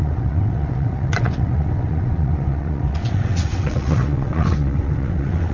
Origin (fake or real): fake